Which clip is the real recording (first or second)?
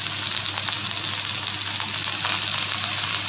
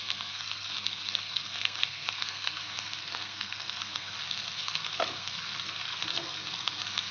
first